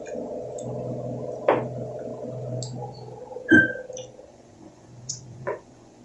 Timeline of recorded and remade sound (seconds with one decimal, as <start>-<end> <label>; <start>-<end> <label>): 0.0-4.3 recorded; 4.3-6.0 remade